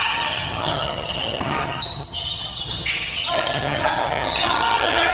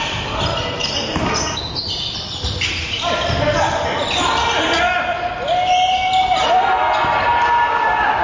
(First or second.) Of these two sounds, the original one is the second